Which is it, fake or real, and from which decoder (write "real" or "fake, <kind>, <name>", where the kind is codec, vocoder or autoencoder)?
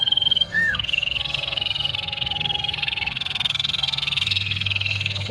fake, codec, SNAC